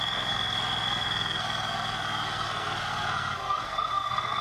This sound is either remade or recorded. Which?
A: remade